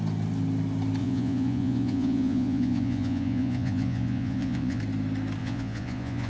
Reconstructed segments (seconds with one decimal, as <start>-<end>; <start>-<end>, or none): 1.0-4.8; 5.4-6.3